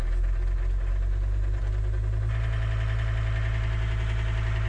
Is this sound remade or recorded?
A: recorded